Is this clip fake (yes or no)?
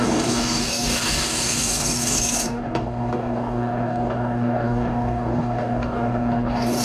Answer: yes